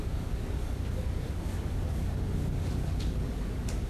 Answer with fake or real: fake